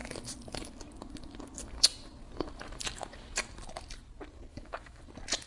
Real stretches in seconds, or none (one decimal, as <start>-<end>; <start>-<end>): 0.0-4.5; 5.0-5.5